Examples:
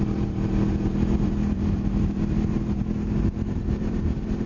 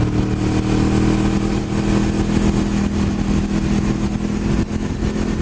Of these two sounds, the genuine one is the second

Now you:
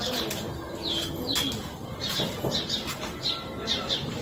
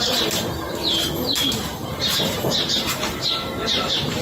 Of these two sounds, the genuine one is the first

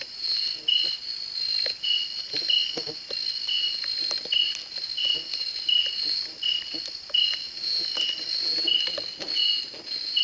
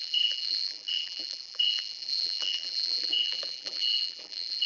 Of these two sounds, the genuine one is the first